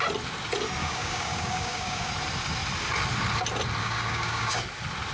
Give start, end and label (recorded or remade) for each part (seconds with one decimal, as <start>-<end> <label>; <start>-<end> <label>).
0.0-0.8 recorded; 0.8-2.1 remade; 2.1-3.8 recorded; 3.8-4.6 remade; 4.6-5.1 recorded